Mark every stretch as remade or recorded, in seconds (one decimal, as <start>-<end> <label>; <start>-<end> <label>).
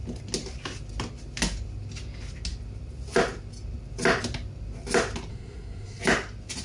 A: 0.0-5.3 recorded; 5.3-6.0 remade; 6.0-6.6 recorded